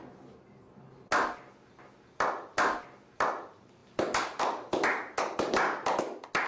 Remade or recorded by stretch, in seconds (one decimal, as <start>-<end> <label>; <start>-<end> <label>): 0.0-6.5 recorded